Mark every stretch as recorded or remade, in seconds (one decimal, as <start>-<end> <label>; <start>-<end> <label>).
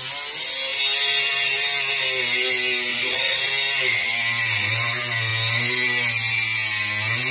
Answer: 0.0-2.9 recorded; 2.9-3.5 remade; 3.5-7.3 recorded